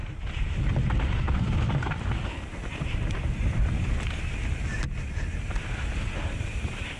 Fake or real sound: real